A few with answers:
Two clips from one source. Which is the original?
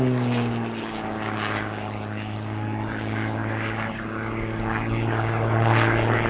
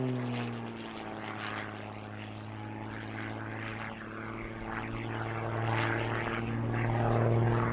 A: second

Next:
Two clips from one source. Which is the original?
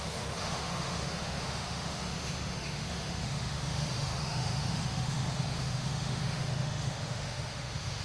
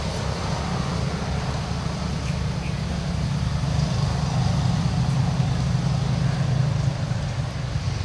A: second